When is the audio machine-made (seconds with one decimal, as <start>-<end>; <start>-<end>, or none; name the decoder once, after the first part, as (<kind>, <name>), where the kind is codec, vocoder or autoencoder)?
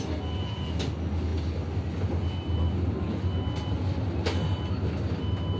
none